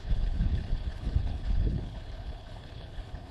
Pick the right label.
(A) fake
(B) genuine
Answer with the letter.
A